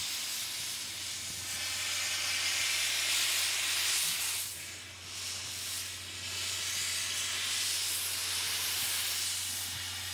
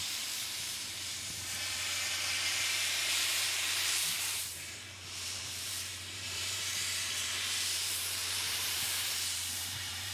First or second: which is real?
first